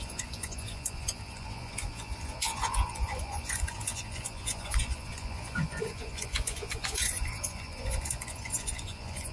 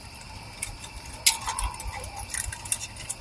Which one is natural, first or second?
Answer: second